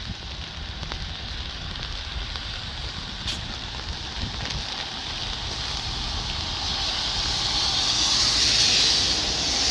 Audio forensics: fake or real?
real